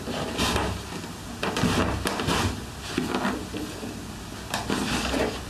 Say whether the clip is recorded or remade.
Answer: recorded